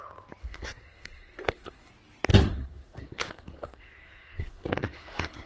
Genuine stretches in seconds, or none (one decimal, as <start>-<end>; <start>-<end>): 0.0-0.4; 1.9-2.3